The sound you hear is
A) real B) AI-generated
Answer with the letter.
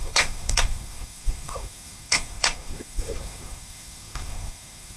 B